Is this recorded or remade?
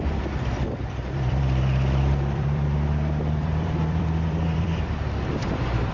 remade